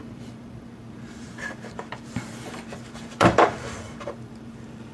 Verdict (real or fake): fake